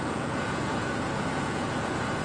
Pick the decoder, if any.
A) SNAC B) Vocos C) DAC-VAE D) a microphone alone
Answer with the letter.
B